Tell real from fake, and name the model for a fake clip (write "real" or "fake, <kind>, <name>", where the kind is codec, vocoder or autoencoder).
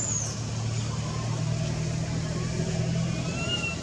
real